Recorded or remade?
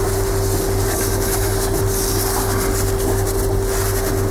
recorded